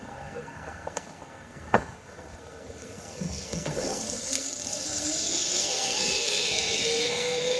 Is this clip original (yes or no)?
no